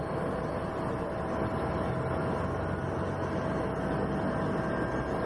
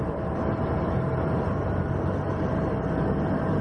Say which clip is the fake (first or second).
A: second